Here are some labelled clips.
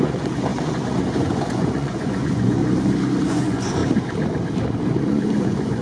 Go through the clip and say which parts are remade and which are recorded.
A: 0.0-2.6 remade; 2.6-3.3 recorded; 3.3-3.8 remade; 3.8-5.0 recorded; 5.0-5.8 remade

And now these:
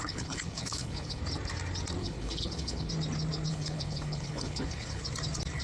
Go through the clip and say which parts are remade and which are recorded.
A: 0.0-1.2 remade; 1.2-2.0 recorded; 2.0-2.9 remade; 2.9-3.5 recorded; 3.5-5.0 remade; 5.0-5.6 recorded

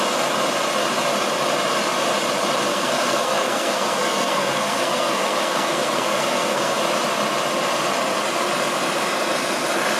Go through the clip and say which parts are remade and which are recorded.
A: 0.0-2.7 recorded; 2.7-6.8 remade; 6.8-10.0 recorded

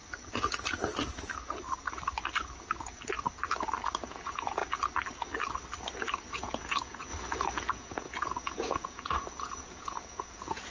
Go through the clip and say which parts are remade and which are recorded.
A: 0.0-4.0 recorded; 4.0-4.6 remade; 4.6-6.3 recorded; 6.3-7.1 remade; 7.1-7.7 recorded; 7.7-10.7 remade

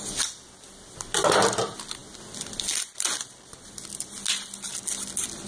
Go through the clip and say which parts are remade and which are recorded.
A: 0.0-5.5 recorded

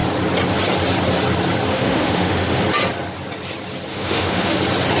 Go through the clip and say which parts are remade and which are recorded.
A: 0.0-1.7 recorded; 1.7-2.6 remade; 2.6-3.9 recorded; 3.9-4.6 remade; 4.6-5.0 recorded

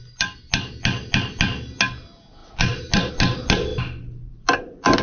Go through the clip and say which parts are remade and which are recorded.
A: 0.0-5.0 recorded

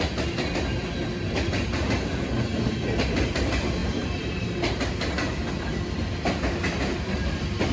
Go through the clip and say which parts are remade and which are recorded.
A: 0.0-7.7 recorded